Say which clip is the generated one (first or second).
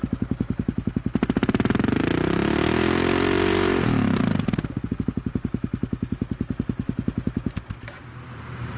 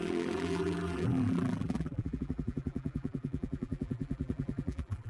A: second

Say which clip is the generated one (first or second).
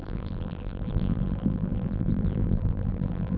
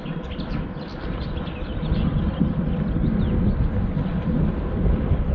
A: first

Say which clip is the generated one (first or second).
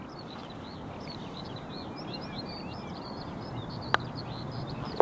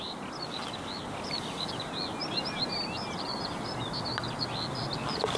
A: first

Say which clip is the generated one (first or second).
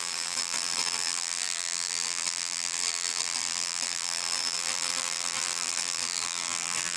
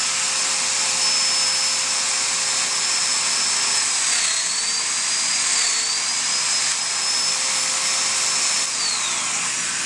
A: first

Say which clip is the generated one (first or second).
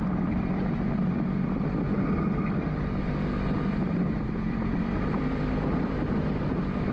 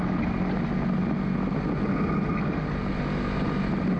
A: first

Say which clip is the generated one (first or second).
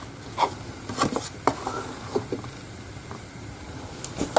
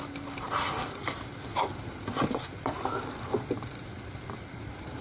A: second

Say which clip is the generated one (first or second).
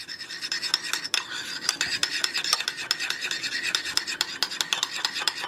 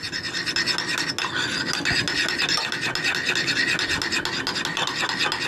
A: first